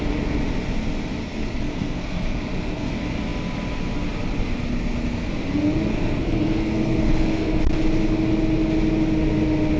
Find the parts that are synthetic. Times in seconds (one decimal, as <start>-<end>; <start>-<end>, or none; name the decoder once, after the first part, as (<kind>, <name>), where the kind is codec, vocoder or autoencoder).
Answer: 1.2-2.9 (codec, SNAC); 4.7-5.3; 5.9-7.6